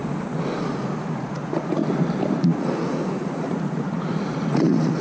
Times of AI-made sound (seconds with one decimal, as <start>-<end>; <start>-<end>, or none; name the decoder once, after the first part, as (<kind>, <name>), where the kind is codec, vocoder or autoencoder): 0.8-1.8 (vocoder, Vocos); 2.4-5.0